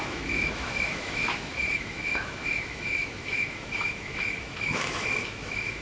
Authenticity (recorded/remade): remade